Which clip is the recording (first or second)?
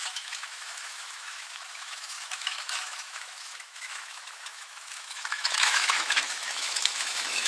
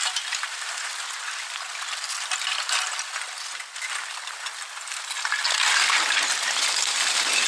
second